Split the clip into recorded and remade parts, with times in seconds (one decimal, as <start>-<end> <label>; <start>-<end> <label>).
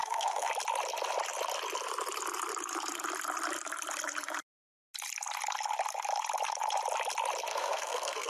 0.0-0.5 remade; 0.5-7.5 recorded; 7.5-8.3 remade